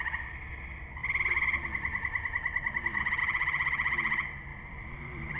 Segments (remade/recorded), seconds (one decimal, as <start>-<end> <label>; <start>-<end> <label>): 0.0-1.0 recorded; 1.0-3.2 remade; 3.2-4.5 recorded; 4.5-5.4 remade